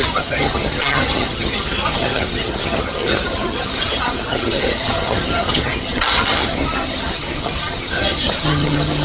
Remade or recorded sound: remade